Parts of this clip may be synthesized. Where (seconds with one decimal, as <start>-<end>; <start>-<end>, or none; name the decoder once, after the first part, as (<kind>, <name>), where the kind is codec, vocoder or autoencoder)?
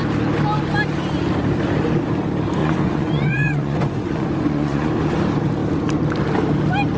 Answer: 2.6-4.9 (vocoder, Vocos)